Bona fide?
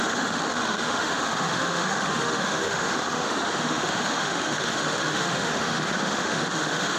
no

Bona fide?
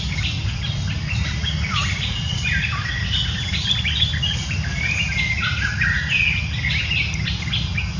yes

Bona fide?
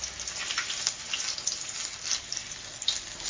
yes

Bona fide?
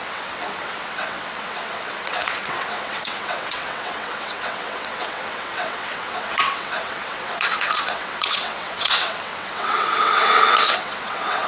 no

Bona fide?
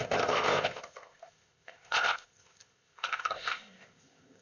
no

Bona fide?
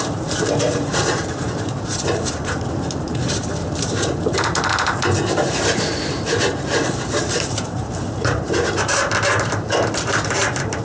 no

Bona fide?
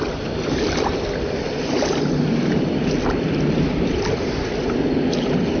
yes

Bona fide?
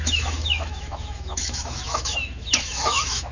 no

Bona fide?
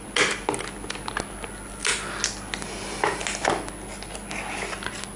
yes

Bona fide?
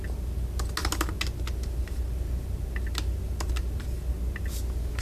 yes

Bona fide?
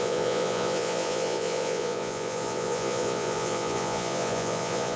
no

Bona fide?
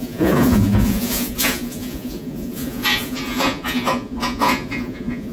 no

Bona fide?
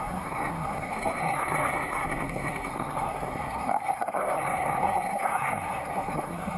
no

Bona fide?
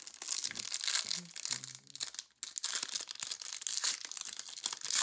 yes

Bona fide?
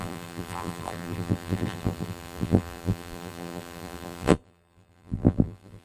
no